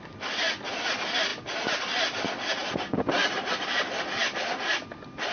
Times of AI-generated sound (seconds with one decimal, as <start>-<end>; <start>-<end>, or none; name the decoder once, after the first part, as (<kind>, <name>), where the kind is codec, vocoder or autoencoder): 2.6-3.7 (vocoder, BigVGAN v2); 4.2-4.8